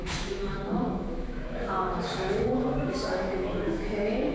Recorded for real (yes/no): no